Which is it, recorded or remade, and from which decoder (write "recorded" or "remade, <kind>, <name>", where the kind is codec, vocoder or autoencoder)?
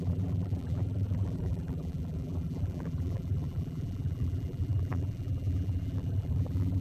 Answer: remade, vocoder, BigVGAN v2